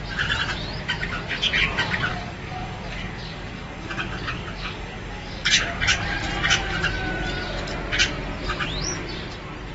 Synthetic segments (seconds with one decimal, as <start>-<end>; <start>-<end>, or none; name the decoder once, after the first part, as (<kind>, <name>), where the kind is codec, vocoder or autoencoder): 2.1-5.8 (codec, DAC)